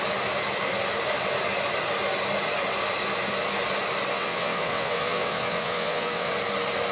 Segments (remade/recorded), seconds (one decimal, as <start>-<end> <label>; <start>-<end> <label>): 0.0-4.1 recorded; 4.1-6.3 remade; 6.3-6.9 recorded